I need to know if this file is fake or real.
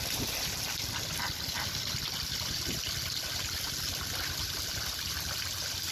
real